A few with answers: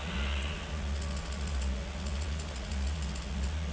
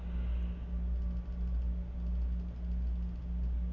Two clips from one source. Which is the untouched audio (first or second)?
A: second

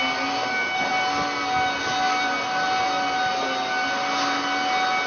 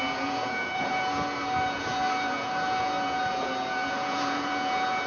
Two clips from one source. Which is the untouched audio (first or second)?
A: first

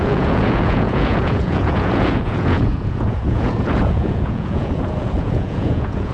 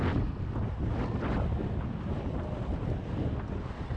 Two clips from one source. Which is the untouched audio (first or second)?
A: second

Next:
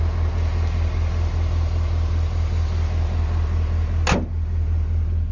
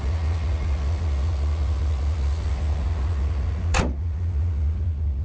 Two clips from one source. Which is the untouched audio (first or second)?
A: first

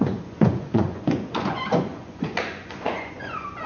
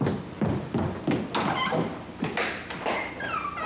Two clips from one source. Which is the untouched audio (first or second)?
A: second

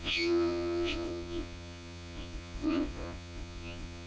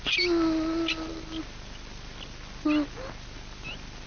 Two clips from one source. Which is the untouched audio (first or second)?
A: second